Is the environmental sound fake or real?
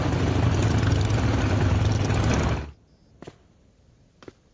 real